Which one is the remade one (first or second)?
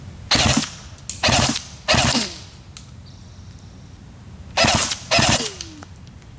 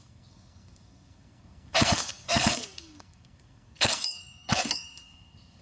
second